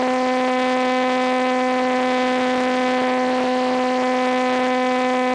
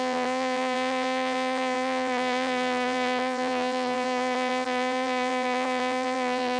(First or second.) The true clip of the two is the first